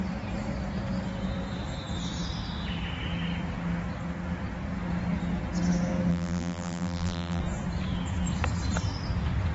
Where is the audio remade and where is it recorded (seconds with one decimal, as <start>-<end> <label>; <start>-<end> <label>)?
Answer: 0.0-6.1 recorded; 6.1-7.4 remade; 7.4-9.5 recorded